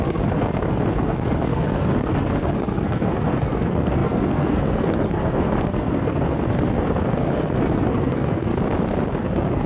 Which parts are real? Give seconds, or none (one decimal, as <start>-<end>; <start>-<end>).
8.5-9.2